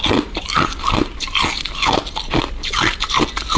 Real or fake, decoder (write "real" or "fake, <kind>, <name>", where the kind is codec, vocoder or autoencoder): real